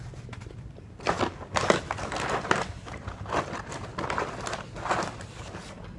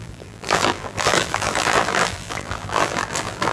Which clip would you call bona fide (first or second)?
first